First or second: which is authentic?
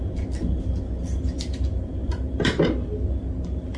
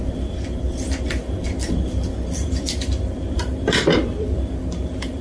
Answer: first